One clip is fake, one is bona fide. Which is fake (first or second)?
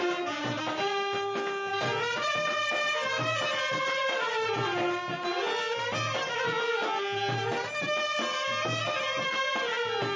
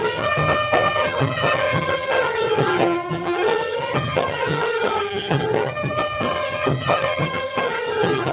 second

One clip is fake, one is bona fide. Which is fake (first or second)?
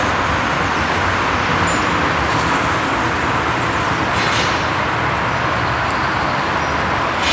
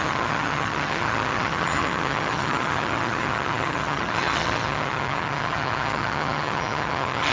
second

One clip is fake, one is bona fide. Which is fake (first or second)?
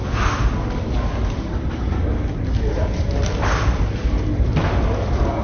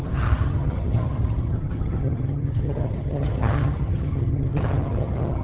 second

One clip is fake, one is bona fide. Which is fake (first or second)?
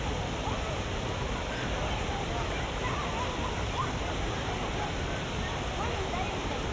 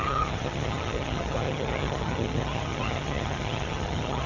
second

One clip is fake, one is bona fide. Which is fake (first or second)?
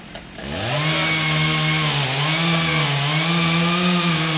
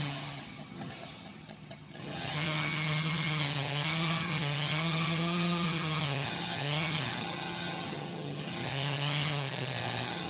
second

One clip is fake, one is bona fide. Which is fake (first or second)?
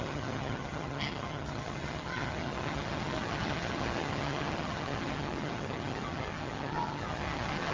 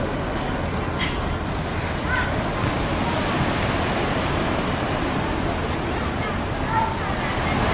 first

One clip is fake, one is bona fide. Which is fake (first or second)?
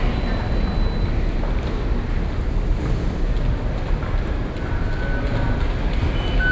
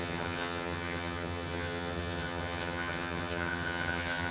second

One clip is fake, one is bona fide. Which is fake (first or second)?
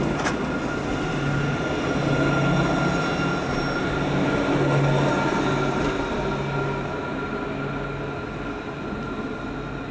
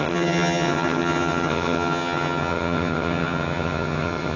second